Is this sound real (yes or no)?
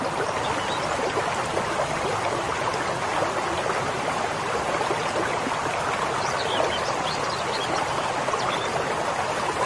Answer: yes